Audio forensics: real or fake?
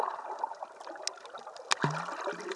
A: real